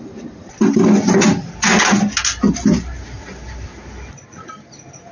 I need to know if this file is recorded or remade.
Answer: recorded